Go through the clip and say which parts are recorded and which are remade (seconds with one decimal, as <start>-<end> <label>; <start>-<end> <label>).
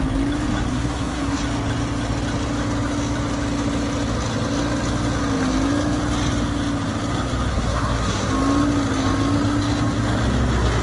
0.0-0.7 recorded; 0.7-1.4 remade; 1.4-7.5 recorded; 7.5-8.3 remade; 8.3-10.8 recorded